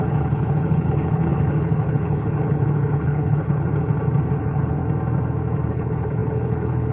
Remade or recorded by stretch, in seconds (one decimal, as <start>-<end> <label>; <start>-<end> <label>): 0.0-3.7 remade; 3.7-4.3 recorded; 4.3-4.8 remade; 4.8-5.7 recorded; 5.7-6.9 remade